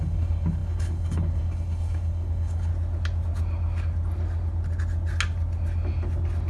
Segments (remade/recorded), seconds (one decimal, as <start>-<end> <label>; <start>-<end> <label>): 0.0-2.7 remade; 2.7-6.5 recorded